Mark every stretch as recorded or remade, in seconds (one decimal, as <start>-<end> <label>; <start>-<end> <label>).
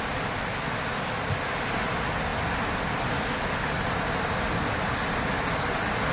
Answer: 0.0-6.1 recorded